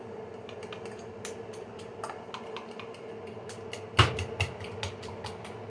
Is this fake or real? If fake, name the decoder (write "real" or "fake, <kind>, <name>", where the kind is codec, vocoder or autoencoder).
real